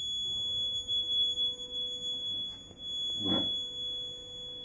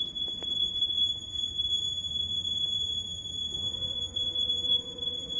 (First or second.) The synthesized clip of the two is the second